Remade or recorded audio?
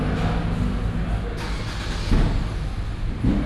recorded